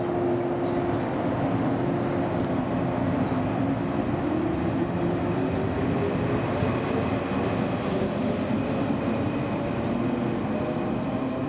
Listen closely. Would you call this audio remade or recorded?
recorded